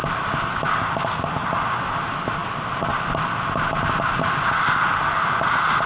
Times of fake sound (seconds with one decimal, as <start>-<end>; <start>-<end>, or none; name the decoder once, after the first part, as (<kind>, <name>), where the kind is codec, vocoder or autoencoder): none